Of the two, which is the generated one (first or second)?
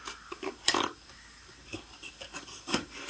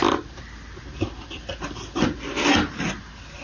first